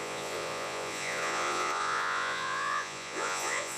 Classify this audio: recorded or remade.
remade